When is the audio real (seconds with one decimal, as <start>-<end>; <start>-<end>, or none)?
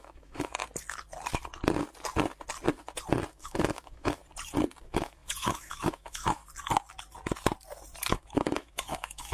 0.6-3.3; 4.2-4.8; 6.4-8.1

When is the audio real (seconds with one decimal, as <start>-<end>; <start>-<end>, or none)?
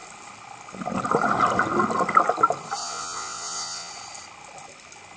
0.0-2.8; 3.9-5.2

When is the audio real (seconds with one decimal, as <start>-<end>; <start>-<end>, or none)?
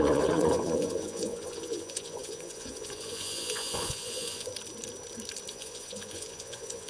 4.5-5.5